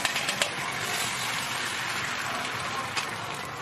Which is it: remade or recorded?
recorded